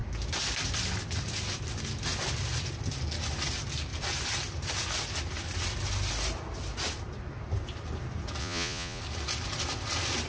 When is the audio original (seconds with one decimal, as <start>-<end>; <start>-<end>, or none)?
0.0-8.4; 9.0-10.3